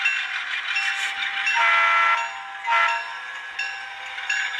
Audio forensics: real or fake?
real